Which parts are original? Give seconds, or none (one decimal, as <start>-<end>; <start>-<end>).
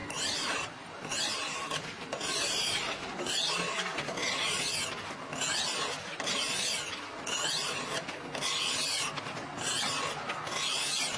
3.5-11.2